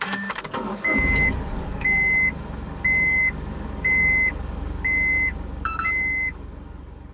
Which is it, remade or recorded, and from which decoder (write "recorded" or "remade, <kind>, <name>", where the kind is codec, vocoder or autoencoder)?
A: remade, codec, DAC